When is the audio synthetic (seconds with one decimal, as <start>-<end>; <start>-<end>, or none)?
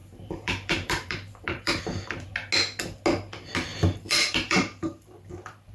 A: 0.0-1.8; 3.7-5.7